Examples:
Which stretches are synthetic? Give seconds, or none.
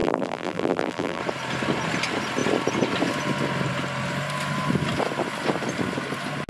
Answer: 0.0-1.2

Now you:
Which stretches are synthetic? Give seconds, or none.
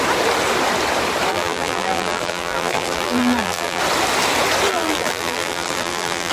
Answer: 1.3-3.8; 4.7-6.3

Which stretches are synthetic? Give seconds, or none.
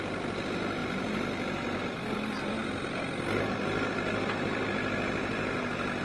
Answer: 0.8-1.8; 2.6-6.0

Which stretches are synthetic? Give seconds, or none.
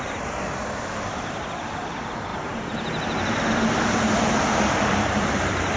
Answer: 2.3-5.8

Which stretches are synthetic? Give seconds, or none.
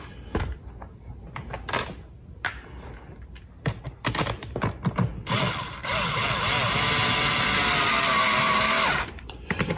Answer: 5.1-6.7; 8.1-9.8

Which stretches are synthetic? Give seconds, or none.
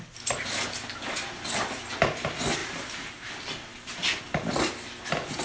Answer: 2.6-3.3; 3.7-4.2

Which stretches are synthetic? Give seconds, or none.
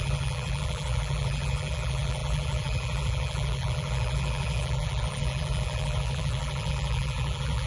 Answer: 0.0-7.7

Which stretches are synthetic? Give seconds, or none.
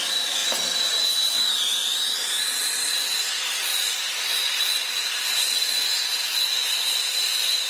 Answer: 3.7-5.8